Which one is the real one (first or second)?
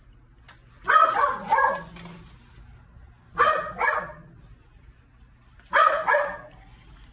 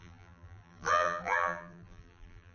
first